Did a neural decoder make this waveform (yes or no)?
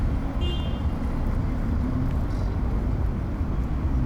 no